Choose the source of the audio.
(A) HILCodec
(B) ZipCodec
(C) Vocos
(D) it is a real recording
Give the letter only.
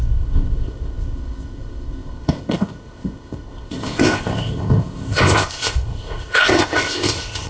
B